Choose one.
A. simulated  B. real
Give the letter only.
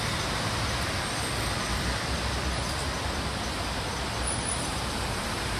B